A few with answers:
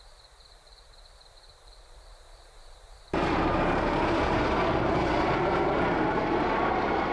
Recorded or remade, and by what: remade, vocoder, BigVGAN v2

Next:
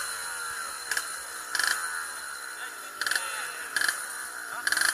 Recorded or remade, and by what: recorded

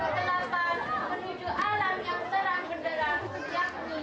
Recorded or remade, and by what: recorded